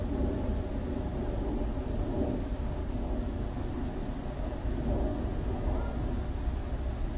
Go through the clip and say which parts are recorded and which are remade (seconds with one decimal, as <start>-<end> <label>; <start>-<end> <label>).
0.0-2.8 recorded; 2.8-3.6 remade; 3.6-7.2 recorded